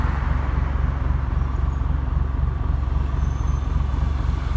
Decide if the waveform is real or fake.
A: real